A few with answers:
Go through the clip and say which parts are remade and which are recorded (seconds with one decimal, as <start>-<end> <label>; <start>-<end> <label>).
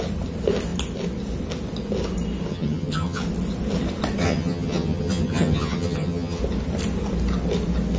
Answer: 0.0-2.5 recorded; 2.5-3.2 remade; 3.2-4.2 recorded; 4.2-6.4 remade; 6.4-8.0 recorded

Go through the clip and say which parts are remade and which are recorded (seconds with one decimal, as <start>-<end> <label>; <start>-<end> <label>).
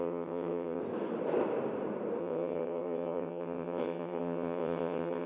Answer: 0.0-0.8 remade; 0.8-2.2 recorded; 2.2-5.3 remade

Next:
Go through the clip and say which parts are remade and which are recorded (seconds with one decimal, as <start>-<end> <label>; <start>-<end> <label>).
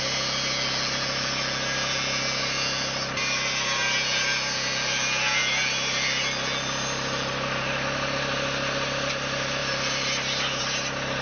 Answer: 0.0-11.2 recorded